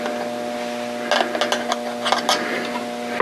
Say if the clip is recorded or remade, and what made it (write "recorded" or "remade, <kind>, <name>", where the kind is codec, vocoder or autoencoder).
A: recorded